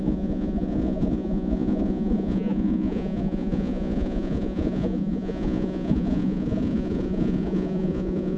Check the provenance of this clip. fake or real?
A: fake